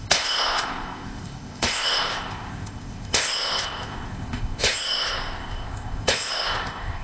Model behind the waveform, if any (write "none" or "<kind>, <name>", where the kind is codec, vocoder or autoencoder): codec, ZipCodec